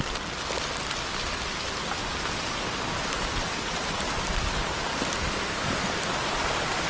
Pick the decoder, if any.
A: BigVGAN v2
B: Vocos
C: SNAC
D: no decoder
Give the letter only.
D